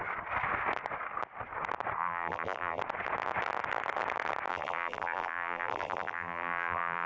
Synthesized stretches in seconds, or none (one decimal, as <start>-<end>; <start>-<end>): 2.0-2.8; 4.5-7.1